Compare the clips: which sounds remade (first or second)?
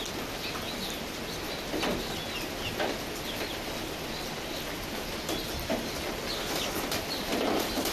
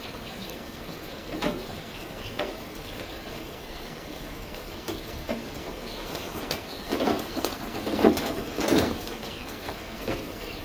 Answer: second